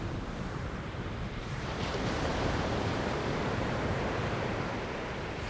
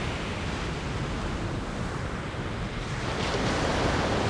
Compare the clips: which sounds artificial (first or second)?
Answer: first